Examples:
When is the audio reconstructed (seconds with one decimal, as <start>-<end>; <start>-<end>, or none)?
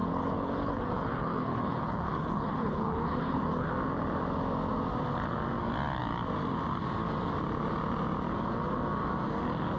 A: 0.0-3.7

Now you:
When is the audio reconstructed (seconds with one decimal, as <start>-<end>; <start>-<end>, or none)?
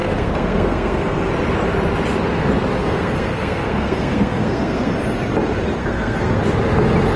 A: 0.0-1.3; 2.8-4.9; 5.8-6.4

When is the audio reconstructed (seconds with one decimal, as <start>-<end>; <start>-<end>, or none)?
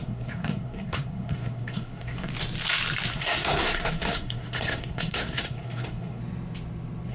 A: 0.0-2.3; 3.1-6.2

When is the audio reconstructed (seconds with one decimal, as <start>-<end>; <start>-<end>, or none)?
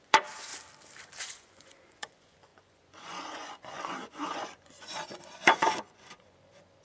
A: 0.0-0.5; 1.2-6.8